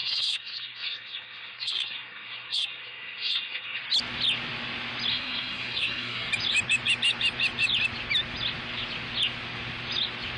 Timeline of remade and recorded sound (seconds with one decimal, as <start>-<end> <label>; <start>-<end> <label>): 0.0-3.8 remade; 3.8-5.1 recorded; 5.1-6.3 remade; 6.3-10.4 recorded